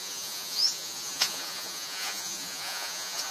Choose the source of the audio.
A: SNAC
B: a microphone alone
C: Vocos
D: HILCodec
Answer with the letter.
C